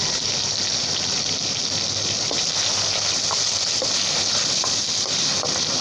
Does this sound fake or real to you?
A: real